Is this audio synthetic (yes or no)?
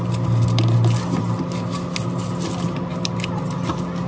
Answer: no